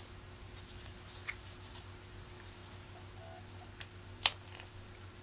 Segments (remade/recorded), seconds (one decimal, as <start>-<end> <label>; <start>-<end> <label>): 0.0-5.2 recorded